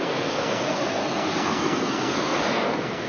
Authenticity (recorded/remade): remade